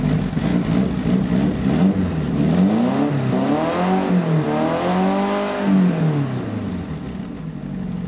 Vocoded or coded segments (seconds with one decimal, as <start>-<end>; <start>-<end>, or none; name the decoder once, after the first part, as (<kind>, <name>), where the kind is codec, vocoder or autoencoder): none